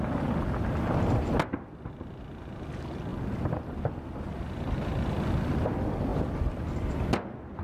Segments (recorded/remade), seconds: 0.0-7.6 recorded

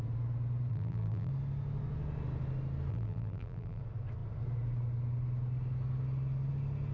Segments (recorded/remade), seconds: 0.0-0.7 recorded; 0.7-1.3 remade; 1.3-2.9 recorded; 2.9-3.8 remade; 3.8-6.9 recorded

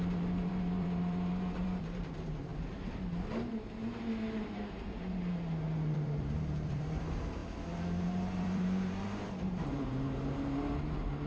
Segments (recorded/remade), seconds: 0.0-2.5 remade; 2.5-3.5 recorded; 3.5-7.4 remade; 7.4-8.0 recorded; 8.0-11.3 remade

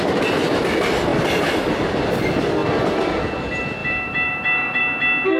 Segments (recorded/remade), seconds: 0.0-1.1 recorded; 1.1-1.7 remade; 1.7-3.8 recorded; 3.8-4.8 remade; 4.8-5.4 recorded

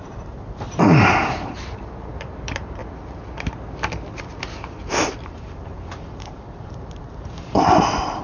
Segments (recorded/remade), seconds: 0.0-2.8 remade; 2.8-5.2 recorded; 5.2-8.2 remade

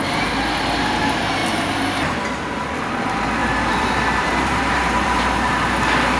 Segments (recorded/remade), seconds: 0.0-3.4 recorded; 3.4-5.5 remade; 5.5-6.2 recorded